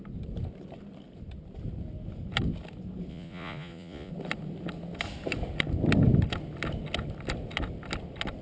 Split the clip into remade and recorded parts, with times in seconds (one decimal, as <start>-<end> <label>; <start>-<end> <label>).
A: 0.0-3.1 recorded; 3.1-4.1 remade; 4.1-8.4 recorded